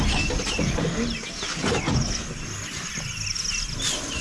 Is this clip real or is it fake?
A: real